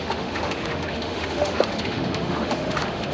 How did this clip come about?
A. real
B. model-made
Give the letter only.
B